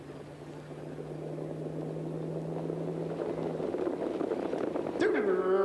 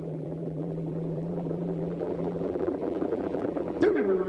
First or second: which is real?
first